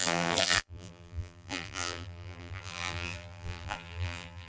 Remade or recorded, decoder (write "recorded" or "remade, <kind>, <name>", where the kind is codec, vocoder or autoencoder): remade, vocoder, BigVGAN v2